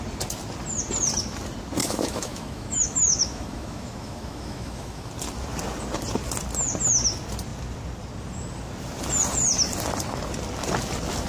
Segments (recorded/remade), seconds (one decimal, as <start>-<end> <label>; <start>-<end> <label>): 0.0-1.8 recorded; 1.8-5.1 remade; 5.1-11.3 recorded